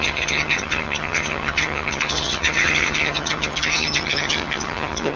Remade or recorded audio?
remade